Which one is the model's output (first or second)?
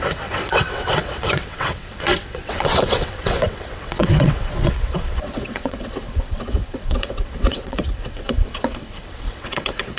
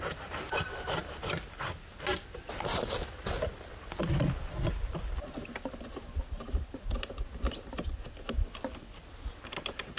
first